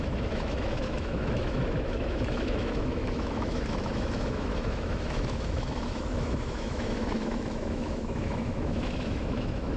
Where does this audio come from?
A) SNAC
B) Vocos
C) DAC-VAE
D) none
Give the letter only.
C